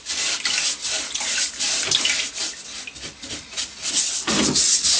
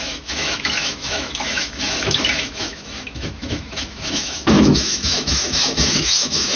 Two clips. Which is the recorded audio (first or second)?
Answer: first